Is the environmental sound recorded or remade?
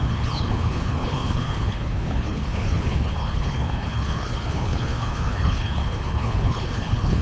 remade